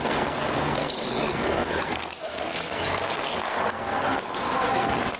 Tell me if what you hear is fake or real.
fake